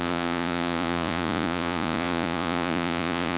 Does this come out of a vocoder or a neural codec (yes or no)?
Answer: yes